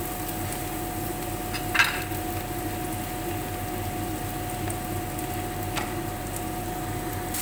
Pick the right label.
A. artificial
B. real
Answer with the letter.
B